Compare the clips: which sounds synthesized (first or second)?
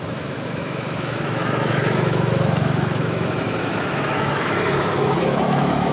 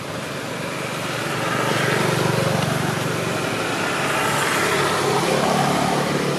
first